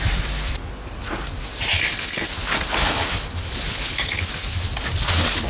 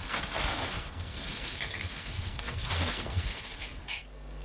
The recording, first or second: first